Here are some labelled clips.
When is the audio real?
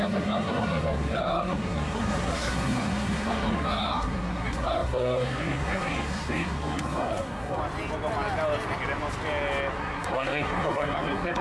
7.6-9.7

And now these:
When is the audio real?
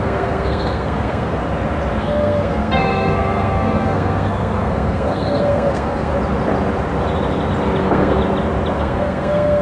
1.4-2.0; 6.1-7.8; 8.2-8.8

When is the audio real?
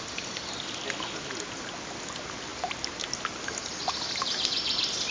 0.0-5.1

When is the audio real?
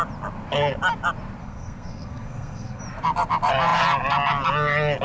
0.0-1.4; 2.8-5.0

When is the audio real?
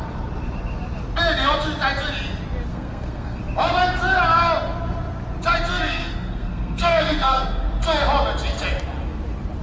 0.0-2.7; 3.4-5.7; 7.7-9.6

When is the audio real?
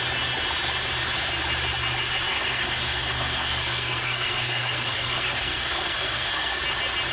0.0-2.3; 6.6-7.1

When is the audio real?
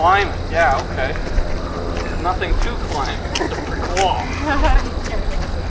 0.0-5.7